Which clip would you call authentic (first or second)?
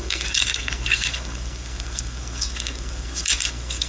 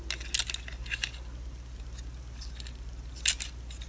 second